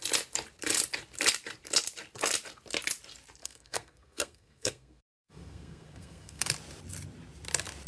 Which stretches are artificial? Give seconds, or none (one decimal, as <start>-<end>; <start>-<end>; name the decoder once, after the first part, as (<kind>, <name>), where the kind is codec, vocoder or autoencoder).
3.4-6.5 (codec, SNAC)